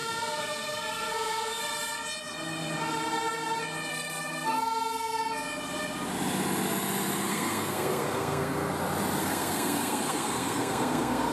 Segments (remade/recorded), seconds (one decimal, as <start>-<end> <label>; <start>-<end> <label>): 0.0-1.6 remade; 1.6-3.9 recorded; 3.9-5.2 remade; 5.2-7.3 recorded; 7.3-8.7 remade; 8.7-9.2 recorded; 9.2-11.3 remade